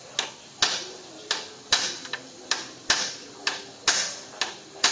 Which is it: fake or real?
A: real